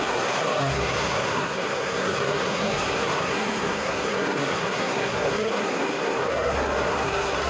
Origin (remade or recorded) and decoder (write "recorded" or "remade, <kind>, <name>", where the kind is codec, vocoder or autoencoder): remade, codec, SNAC